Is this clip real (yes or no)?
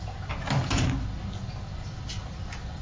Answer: yes